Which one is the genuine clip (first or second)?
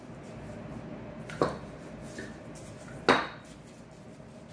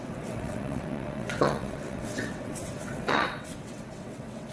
first